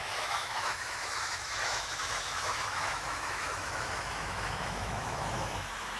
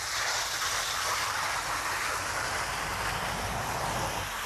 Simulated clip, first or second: first